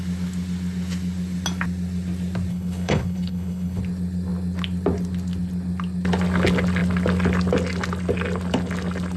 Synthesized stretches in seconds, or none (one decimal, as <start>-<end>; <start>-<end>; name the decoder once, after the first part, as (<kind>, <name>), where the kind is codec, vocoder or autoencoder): 2.5-3.8 (codec, HILCodec)